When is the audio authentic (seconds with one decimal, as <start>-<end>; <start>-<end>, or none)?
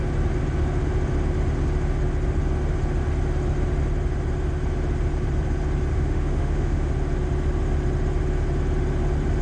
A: 0.0-5.9; 6.9-9.4